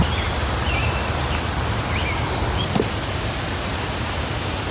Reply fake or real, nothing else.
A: real